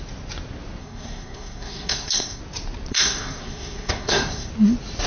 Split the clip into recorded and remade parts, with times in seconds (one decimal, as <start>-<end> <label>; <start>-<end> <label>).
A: 0.0-0.8 recorded; 0.8-2.4 remade; 2.4-2.9 recorded; 2.9-4.5 remade; 4.5-5.1 recorded